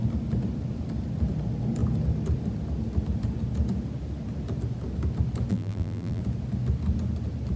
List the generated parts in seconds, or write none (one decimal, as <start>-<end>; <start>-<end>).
5.5-6.2

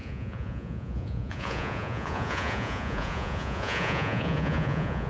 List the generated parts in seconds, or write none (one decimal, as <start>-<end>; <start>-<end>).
0.0-5.1

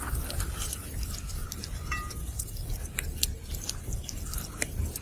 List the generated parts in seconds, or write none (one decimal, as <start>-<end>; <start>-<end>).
1.4-3.5; 4.0-5.0